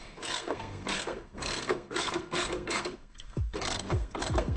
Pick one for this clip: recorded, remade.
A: remade